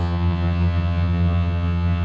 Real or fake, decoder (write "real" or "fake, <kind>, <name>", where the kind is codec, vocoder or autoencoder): fake, vocoder, HiFi-GAN